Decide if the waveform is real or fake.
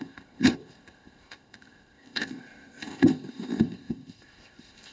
fake